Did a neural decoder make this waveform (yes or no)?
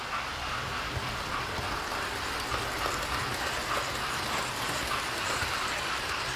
no